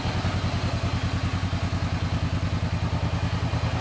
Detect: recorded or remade recorded